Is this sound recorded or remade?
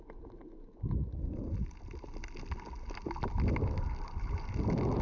recorded